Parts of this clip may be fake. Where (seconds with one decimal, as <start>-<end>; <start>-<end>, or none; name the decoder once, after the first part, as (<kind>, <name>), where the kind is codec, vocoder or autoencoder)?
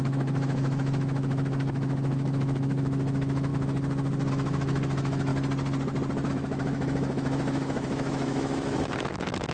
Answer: 0.0-3.5 (autoencoder, DAC-VAE); 4.3-5.3; 6.3-9.5